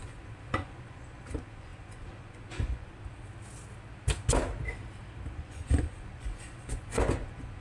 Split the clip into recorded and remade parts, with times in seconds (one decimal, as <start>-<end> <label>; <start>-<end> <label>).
0.0-2.9 remade; 2.9-5.3 recorded; 5.3-7.6 remade